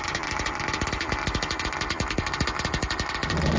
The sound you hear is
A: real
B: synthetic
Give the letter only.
A